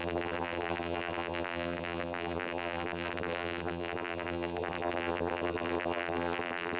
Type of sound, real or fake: fake